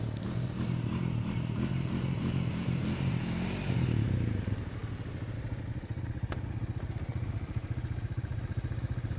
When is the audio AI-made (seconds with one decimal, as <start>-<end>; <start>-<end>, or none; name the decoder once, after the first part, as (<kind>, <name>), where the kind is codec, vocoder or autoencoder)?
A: 0.0-4.8 (vocoder, BigVGAN v2); 5.4-9.2